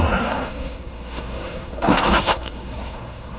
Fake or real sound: fake